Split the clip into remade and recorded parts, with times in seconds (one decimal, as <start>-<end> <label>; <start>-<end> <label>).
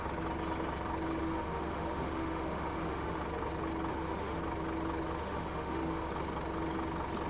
0.0-1.2 recorded; 1.2-3.2 remade; 3.2-3.9 recorded; 3.9-4.4 remade; 4.4-5.2 recorded; 5.2-6.1 remade; 6.1-7.3 recorded